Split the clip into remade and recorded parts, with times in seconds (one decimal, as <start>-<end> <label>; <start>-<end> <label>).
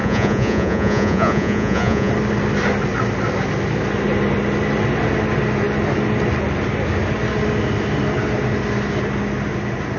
0.0-2.1 remade; 2.1-10.0 recorded